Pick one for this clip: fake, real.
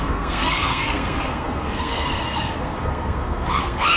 fake